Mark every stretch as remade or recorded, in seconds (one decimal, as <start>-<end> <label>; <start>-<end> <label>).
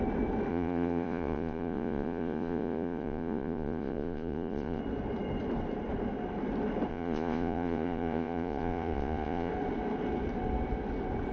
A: 0.0-0.5 recorded; 0.5-4.8 remade; 4.8-6.9 recorded; 6.9-9.5 remade; 9.5-11.3 recorded